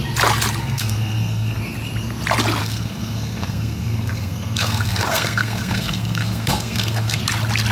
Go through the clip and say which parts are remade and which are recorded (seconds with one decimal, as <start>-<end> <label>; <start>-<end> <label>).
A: 0.0-0.6 recorded; 0.6-1.6 remade; 1.6-2.6 recorded; 2.6-7.2 remade; 7.2-7.7 recorded